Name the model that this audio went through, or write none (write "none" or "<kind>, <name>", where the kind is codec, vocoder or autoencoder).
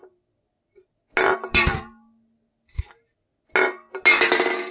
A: none